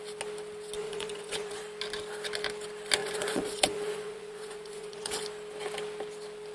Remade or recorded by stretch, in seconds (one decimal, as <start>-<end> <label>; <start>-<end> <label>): 0.0-0.8 recorded; 0.8-1.6 remade; 1.6-3.0 recorded; 3.0-5.2 remade; 5.2-6.5 recorded